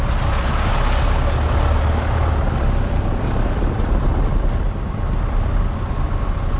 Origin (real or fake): real